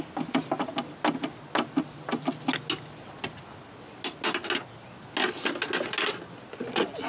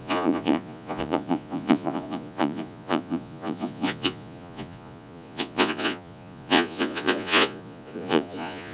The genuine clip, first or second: first